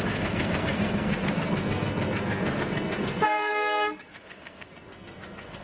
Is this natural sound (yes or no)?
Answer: no